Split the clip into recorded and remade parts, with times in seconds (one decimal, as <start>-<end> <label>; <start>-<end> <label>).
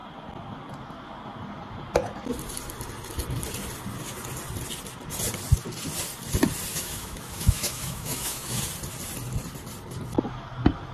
0.0-6.7 recorded; 6.7-8.6 remade; 8.6-10.9 recorded